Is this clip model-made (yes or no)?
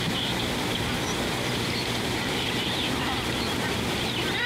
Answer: yes